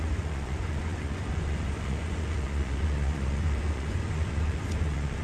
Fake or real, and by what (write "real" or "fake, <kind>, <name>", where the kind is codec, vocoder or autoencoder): fake, vocoder, Vocos